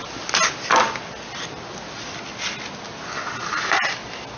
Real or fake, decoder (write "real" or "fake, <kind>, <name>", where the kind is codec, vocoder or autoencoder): real